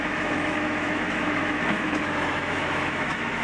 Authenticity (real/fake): fake